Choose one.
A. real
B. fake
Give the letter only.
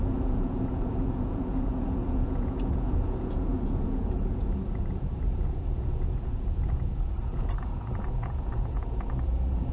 B